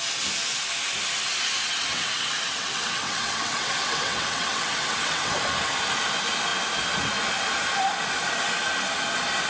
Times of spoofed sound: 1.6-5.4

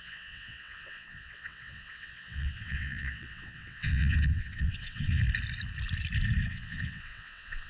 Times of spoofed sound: 0.0-5.2; 6.5-7.7

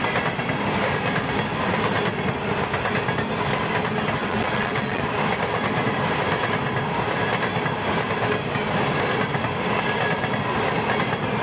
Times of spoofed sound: 4.2-5.0

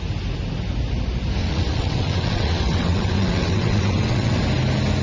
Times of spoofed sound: 1.4-4.4

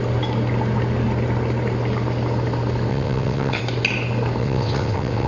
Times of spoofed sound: 2.9-3.6; 4.4-5.3

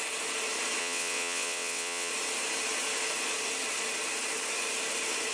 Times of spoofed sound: 0.8-2.1

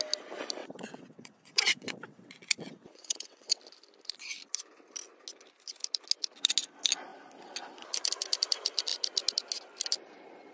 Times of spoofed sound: 0.6-3.6